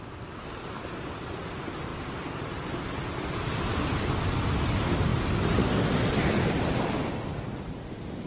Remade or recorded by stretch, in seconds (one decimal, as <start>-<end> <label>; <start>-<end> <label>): 0.0-8.3 recorded